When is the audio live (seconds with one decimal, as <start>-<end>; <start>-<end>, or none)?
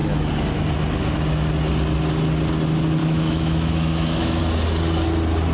0.0-3.0; 4.4-5.5